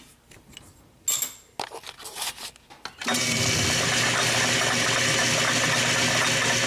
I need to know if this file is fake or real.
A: real